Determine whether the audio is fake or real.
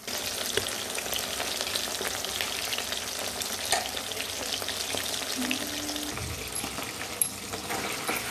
real